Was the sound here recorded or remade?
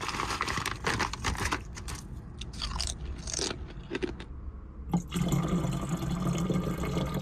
recorded